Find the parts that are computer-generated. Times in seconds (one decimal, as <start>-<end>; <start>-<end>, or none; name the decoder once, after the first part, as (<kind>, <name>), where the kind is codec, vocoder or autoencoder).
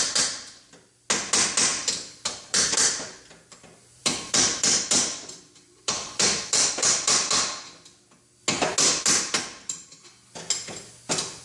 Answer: 1.7-2.8 (vocoder, BigVGAN v2); 4.0-7.3